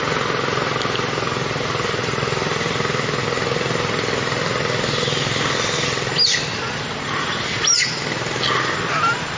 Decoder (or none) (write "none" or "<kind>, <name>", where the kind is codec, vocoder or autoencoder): none